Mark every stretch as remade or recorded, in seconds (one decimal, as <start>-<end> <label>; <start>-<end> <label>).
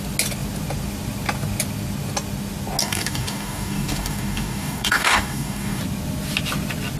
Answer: 0.0-2.8 recorded; 2.8-5.8 remade; 5.8-7.0 recorded